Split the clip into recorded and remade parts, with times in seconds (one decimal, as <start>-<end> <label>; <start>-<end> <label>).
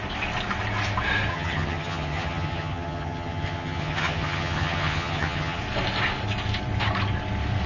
0.0-1.3 recorded; 1.3-5.6 remade; 5.6-7.7 recorded